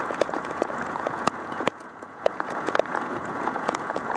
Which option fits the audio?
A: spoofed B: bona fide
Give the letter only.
A